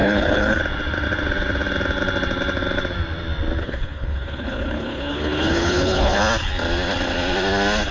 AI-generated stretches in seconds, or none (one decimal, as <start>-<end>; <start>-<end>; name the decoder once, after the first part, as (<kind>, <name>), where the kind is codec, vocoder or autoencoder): 0.0-0.6 (codec, HILCodec); 3.6-6.2